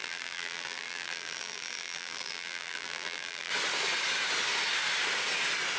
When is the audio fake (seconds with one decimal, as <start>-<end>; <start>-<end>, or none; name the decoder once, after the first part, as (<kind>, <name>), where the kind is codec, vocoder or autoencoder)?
0.0-3.5 (vocoder, BigVGAN v2)

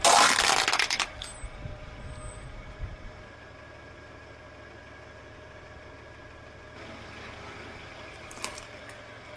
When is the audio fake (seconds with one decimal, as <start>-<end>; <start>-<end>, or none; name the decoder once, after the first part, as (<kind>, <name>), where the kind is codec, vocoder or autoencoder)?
none

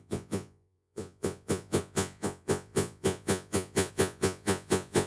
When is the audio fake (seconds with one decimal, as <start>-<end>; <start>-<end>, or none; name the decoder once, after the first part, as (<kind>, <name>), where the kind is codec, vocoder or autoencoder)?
0.0-5.1 (vocoder, Vocos)

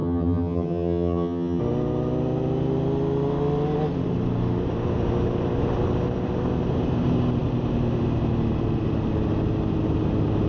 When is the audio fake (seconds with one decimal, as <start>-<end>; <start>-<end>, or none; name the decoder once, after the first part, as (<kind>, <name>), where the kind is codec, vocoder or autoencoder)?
0.0-1.6 (vocoder, HiFi-GAN)

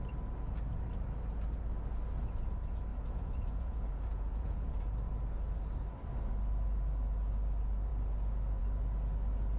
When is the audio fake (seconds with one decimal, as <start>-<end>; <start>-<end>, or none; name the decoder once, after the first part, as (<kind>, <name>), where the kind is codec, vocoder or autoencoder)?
2.9-4.8 (vocoder, Vocos)